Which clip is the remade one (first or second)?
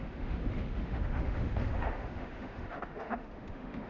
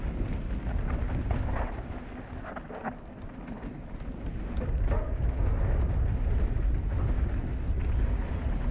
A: first